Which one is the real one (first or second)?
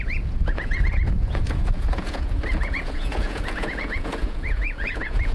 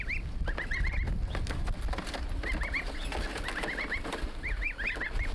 second